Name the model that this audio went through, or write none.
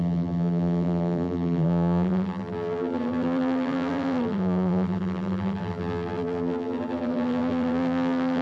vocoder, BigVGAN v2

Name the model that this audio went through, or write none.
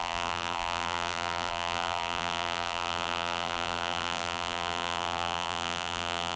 vocoder, BigVGAN v2